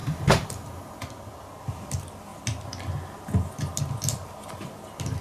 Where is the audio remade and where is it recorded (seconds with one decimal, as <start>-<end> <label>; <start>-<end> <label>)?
0.0-1.0 remade; 1.0-5.2 recorded